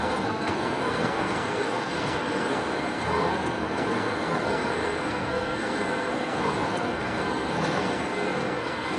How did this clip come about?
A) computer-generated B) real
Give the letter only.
A